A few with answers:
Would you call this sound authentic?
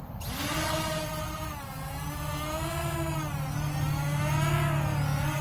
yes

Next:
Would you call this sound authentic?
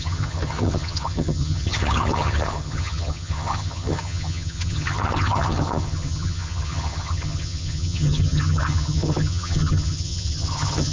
no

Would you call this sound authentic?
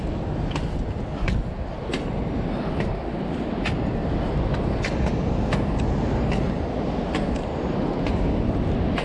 yes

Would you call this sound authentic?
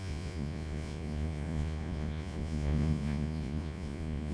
no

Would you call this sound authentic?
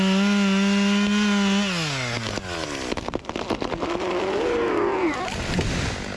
yes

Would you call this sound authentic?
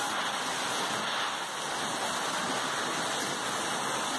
yes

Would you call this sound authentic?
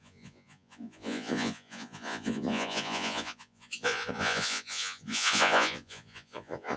no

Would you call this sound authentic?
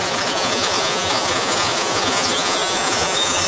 no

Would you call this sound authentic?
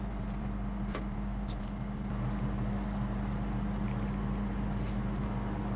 yes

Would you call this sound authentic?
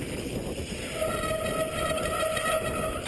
yes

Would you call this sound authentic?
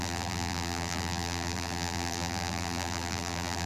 no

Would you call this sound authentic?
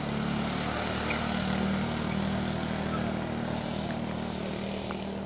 yes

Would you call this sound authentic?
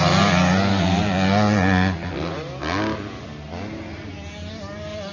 yes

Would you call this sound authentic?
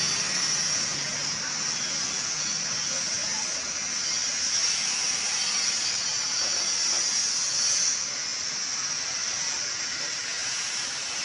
yes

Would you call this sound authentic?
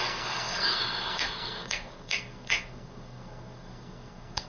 no